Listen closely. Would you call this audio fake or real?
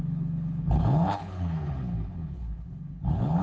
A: fake